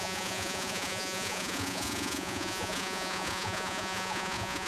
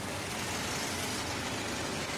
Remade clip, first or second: first